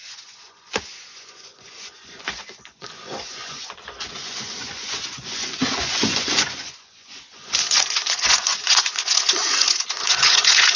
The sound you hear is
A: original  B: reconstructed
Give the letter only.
B